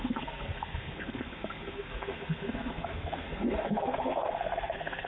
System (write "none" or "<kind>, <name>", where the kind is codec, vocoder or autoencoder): codec, SNAC